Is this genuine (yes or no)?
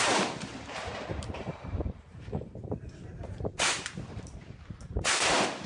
no